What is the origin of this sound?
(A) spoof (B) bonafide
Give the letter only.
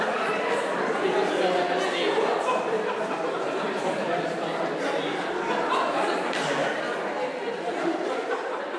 B